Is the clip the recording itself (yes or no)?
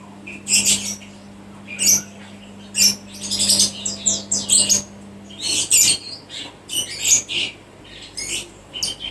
yes